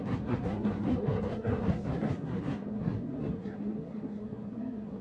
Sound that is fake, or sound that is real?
fake